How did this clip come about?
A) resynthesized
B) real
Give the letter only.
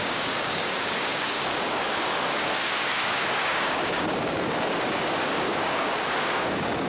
A